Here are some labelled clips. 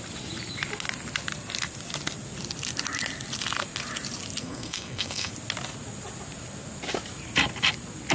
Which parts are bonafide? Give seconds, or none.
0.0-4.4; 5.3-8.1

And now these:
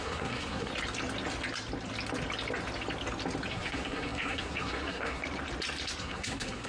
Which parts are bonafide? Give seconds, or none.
0.7-3.5; 5.2-6.0

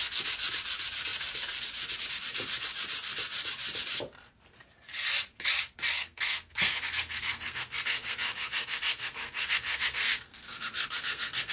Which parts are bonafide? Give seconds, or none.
0.0-6.0

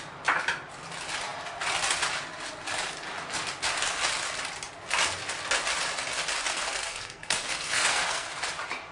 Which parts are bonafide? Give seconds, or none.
0.0-6.5; 8.3-8.9

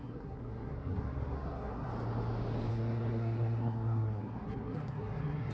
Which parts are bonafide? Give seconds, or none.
1.9-2.7